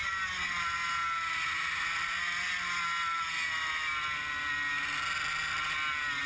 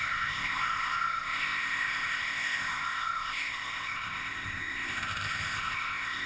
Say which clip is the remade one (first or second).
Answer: second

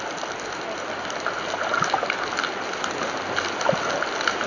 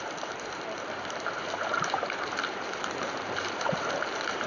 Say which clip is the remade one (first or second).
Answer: second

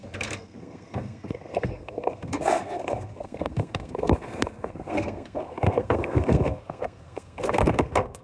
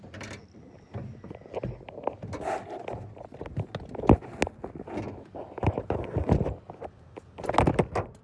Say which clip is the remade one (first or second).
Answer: first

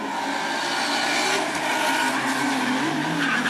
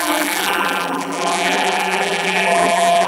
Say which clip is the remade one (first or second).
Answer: second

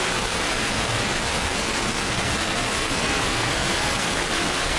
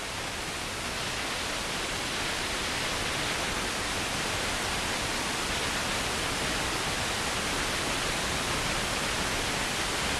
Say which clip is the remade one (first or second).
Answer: first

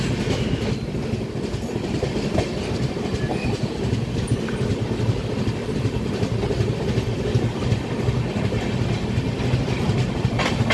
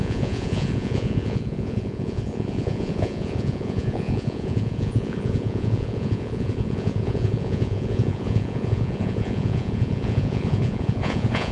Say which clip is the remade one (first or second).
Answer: second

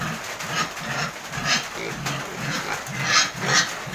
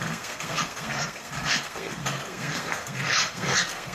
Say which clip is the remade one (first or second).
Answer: second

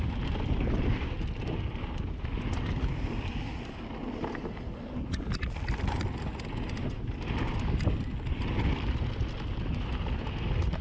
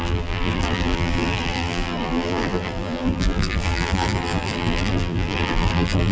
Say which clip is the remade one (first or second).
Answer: second